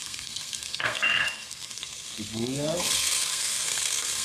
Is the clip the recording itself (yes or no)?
no